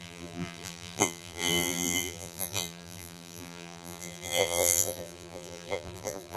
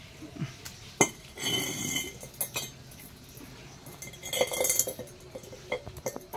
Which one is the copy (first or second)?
first